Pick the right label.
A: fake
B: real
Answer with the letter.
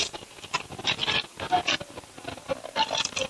B